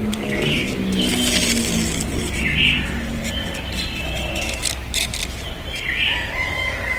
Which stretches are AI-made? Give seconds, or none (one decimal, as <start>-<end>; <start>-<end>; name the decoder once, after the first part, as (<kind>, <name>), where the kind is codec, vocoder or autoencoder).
0.0-1.1 (codec, DAC); 4.4-5.2; 6.5-7.0